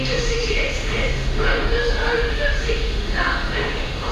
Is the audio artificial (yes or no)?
yes